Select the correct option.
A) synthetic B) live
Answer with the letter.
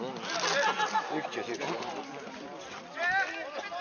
B